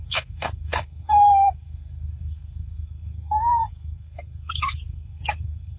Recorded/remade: remade